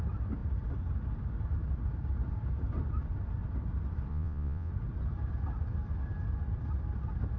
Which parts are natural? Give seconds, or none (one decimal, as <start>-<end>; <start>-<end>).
0.0-4.1; 4.7-7.4